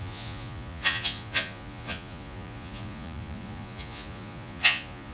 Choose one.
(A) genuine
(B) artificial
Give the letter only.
B